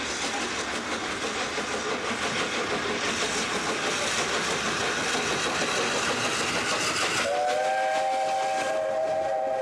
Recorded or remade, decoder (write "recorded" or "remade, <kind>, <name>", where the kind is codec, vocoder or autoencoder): recorded